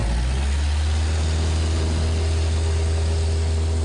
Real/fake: real